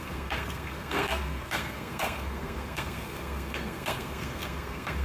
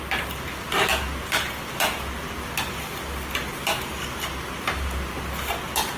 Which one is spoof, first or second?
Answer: first